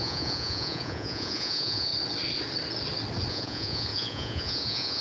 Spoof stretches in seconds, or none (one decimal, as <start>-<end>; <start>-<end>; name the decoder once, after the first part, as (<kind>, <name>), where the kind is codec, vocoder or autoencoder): 0.0-1.9 (vocoder, Vocos); 3.3-5.0